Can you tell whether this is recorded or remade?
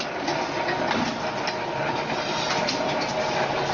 recorded